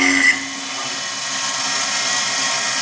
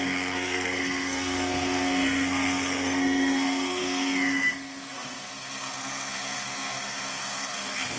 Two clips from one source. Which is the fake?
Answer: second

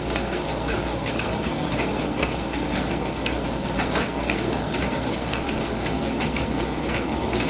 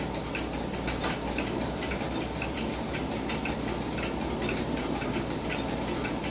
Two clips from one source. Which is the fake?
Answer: first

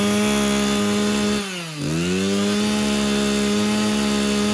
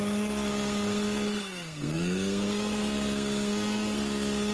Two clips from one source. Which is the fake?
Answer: second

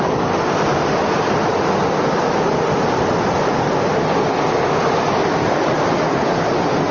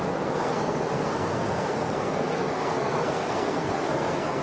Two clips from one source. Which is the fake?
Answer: second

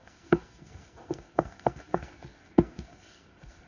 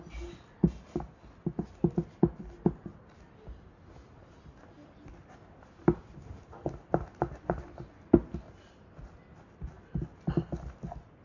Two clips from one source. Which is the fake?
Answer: first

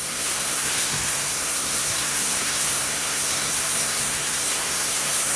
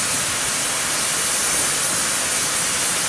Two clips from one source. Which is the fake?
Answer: first